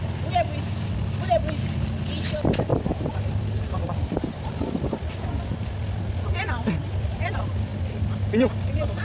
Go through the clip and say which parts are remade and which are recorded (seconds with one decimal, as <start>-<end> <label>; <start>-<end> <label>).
0.0-2.7 recorded; 2.7-4.5 remade; 4.5-9.0 recorded